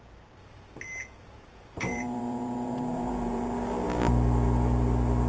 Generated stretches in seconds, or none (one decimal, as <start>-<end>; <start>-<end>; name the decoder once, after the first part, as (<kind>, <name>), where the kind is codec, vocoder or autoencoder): 1.0-3.4 (vocoder, Vocos)